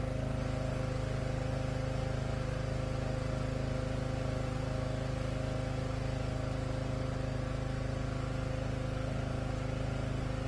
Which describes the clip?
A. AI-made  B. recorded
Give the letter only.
B